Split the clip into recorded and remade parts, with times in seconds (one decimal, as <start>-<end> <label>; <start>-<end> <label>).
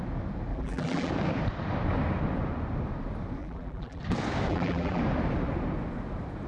0.0-0.5 recorded; 0.5-1.1 remade; 1.1-3.4 recorded; 3.4-4.0 remade; 4.0-4.5 recorded; 4.5-5.0 remade; 5.0-6.5 recorded